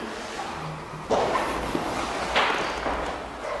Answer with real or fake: real